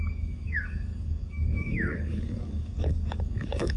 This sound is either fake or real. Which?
fake